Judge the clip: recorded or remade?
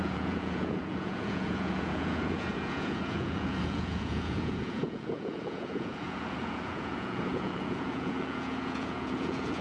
remade